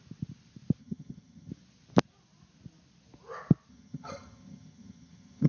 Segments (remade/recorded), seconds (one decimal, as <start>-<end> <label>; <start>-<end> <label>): 0.0-0.8 recorded; 0.8-1.5 remade; 1.5-3.7 recorded; 3.7-5.5 remade

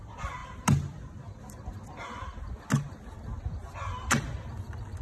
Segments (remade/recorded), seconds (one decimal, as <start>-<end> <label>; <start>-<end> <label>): 0.0-5.0 recorded

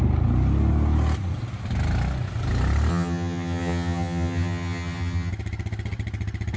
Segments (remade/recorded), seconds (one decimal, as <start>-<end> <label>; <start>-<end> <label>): 0.0-2.9 recorded; 2.9-5.3 remade; 5.3-6.6 recorded